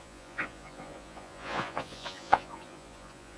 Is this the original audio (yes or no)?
no